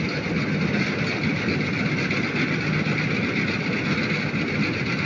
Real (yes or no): yes